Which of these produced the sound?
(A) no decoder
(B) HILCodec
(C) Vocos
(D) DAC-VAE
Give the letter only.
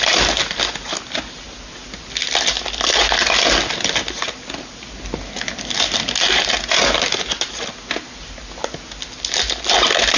A